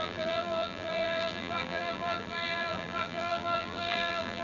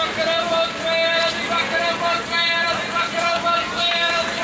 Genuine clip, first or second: second